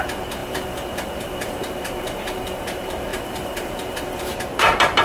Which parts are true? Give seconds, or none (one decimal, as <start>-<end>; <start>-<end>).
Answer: none